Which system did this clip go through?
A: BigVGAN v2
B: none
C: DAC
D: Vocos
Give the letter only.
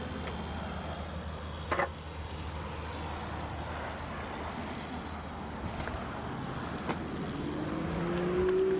B